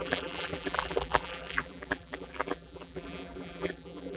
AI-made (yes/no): yes